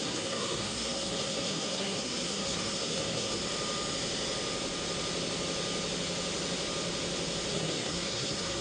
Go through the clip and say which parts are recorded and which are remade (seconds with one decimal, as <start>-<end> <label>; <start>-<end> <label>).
0.0-3.4 remade; 3.4-7.5 recorded; 7.5-8.6 remade